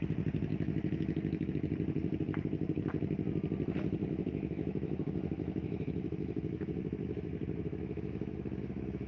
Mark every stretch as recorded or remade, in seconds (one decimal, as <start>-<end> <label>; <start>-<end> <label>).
0.0-0.5 recorded; 0.5-1.5 remade; 1.5-4.0 recorded; 4.0-9.1 remade